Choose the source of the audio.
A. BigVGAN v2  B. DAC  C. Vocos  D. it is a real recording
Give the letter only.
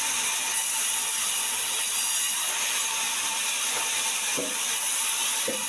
D